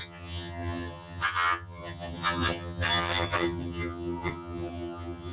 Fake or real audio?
fake